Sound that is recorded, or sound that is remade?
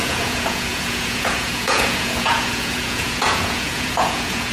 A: remade